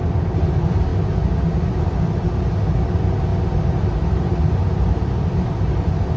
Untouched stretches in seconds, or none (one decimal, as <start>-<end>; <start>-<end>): 0.0-6.2